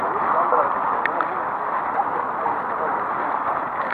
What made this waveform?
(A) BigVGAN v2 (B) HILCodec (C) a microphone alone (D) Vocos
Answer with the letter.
C